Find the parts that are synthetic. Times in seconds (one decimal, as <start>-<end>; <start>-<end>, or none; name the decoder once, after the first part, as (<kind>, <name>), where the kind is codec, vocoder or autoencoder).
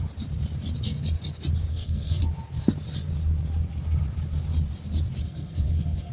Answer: 1.7-2.2 (codec, SNAC); 5.2-6.1